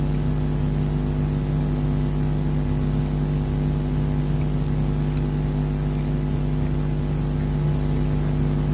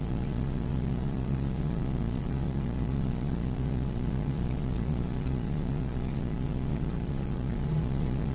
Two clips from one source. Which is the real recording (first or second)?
first